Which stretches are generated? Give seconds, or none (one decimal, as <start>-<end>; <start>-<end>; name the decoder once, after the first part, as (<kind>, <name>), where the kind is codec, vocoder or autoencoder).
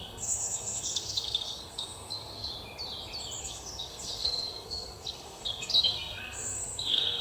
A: 0.0-2.5 (codec, SNAC); 3.4-7.2